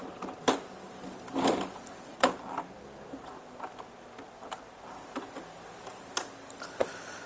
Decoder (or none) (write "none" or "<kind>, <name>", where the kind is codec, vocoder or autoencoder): none